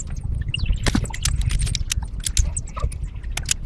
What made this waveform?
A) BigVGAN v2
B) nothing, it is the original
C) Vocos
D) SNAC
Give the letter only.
B